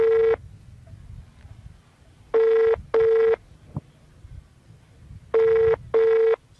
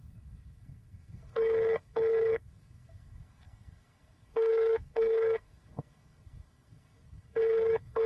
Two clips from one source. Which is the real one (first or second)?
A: first